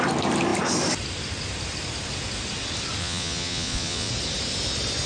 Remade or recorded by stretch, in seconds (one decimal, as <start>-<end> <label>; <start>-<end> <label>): 0.0-3.0 recorded; 3.0-4.1 remade; 4.1-5.1 recorded